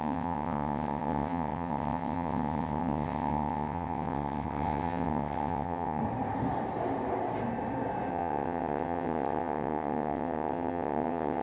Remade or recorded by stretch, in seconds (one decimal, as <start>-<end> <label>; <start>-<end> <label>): 0.0-6.0 remade; 6.0-8.1 recorded; 8.1-11.4 remade